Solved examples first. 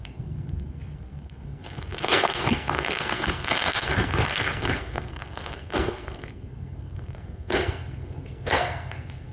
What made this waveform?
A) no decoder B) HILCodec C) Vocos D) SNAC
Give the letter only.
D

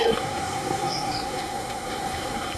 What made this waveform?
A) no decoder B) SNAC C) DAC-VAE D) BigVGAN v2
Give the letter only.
B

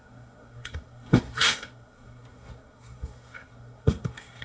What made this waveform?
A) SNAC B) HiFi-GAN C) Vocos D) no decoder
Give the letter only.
A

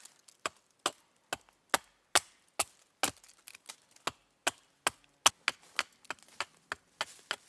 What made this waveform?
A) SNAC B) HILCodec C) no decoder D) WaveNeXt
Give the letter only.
C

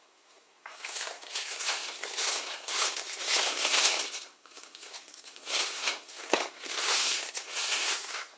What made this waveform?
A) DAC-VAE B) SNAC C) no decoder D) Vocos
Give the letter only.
B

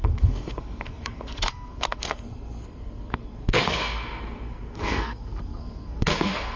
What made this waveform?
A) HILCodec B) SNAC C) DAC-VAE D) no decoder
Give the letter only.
B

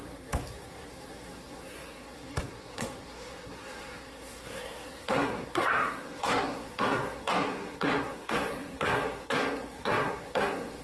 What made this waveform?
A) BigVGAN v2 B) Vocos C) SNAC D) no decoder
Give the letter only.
C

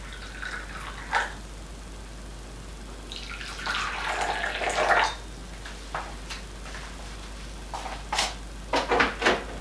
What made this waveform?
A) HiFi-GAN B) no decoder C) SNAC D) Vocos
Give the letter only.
B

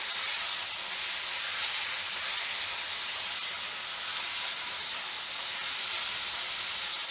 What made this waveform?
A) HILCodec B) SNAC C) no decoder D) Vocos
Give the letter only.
C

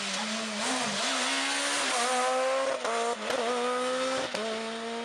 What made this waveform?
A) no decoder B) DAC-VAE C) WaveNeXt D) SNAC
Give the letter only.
A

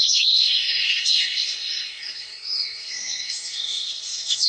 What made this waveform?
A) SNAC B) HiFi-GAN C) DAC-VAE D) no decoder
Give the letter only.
A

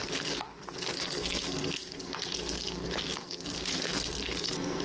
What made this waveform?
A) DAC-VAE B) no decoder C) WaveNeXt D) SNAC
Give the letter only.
D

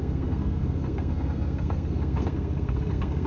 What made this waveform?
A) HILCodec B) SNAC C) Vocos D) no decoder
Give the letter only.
B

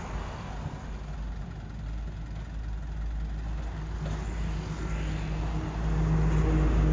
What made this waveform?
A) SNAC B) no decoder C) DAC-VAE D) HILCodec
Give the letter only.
B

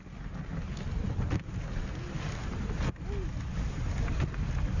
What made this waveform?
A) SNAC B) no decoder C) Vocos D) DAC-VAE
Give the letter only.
B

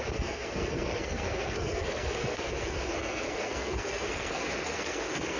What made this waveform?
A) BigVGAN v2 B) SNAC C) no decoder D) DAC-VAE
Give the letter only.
B